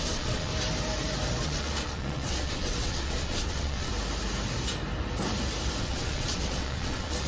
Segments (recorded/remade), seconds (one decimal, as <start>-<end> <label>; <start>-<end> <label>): 0.0-0.5 remade; 0.5-1.4 recorded; 1.4-3.9 remade; 3.9-5.8 recorded; 5.8-7.3 remade